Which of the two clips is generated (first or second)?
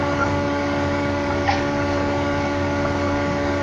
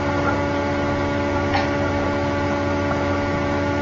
first